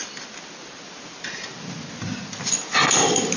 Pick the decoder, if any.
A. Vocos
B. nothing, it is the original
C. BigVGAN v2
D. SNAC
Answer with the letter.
B